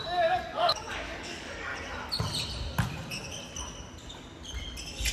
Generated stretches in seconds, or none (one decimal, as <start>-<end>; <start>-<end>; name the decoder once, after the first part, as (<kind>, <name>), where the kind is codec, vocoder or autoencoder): 0.0-1.7 (codec, DAC)